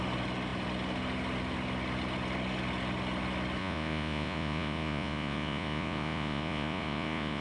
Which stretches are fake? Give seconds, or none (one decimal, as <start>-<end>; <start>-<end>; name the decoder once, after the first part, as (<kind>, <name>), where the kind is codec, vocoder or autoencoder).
3.6-7.4 (vocoder, Vocos)